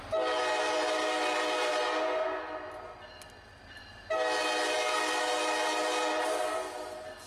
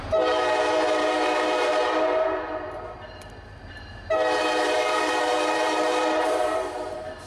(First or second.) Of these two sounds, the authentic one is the first